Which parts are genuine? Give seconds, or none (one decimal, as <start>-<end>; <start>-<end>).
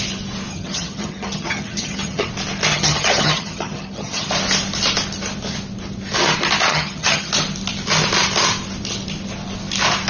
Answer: 0.0-0.5; 2.3-2.7; 4.3-6.7; 7.3-10.1